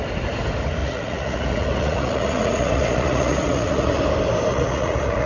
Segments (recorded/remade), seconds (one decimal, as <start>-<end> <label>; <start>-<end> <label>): 0.0-0.8 recorded; 0.8-4.0 remade; 4.0-4.5 recorded; 4.5-5.3 remade